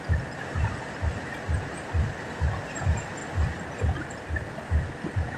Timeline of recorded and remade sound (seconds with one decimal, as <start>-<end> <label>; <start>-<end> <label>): 0.0-5.4 recorded